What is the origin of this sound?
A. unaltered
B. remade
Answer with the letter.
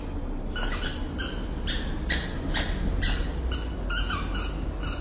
A